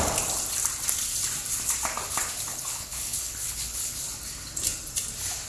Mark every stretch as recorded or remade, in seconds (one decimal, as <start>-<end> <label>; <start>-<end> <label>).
0.0-2.5 recorded; 2.5-4.0 remade; 4.0-5.5 recorded